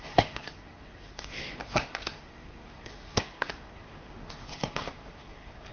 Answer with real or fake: fake